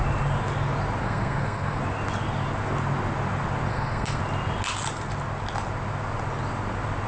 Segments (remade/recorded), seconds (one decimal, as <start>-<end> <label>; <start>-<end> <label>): 0.0-1.0 recorded; 1.0-1.8 remade; 1.8-3.7 recorded; 3.7-4.2 remade; 4.2-7.1 recorded